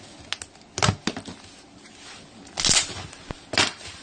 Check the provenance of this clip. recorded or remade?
recorded